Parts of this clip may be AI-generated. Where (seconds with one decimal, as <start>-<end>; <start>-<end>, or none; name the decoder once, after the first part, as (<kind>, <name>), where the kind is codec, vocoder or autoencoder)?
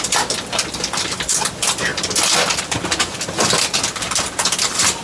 none